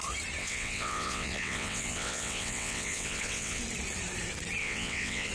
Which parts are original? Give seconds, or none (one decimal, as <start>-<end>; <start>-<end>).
0.0-0.4; 3.6-4.6